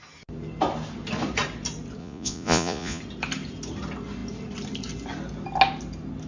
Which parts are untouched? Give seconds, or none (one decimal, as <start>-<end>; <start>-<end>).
0.0-2.0; 3.0-6.3